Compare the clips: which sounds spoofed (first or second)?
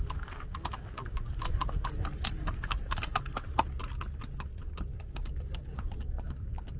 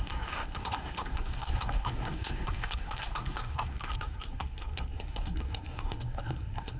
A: second